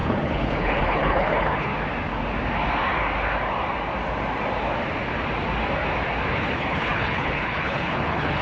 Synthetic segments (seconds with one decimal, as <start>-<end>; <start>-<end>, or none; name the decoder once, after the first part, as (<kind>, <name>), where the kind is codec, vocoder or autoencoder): 0.0-1.7 (codec, HILCodec); 6.3-8.4